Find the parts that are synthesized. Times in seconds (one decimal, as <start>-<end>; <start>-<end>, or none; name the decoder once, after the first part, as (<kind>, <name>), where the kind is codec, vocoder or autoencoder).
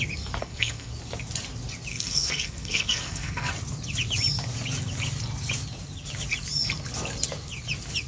0.4-0.9 (codec, SNAC); 1.9-3.5